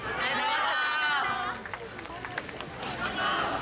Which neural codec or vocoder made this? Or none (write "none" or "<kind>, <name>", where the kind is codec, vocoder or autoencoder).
none